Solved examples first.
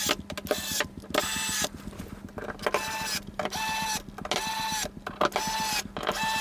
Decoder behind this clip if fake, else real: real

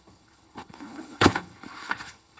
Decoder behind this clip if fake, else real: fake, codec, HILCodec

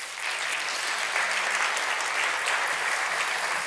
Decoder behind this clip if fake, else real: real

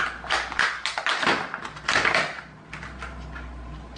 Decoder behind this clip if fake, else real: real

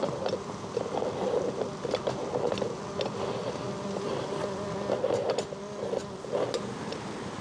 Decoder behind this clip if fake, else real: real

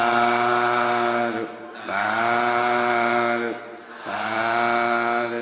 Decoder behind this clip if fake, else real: real